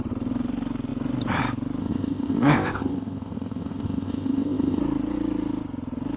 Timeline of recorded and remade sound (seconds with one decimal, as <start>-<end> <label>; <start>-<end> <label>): 0.0-1.8 recorded; 1.8-4.8 remade; 4.8-6.2 recorded